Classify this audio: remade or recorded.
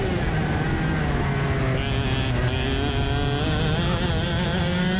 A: recorded